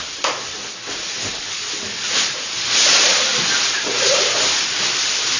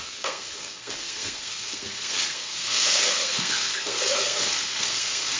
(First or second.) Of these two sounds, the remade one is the second